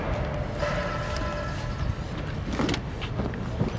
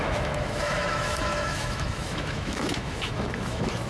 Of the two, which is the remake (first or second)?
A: second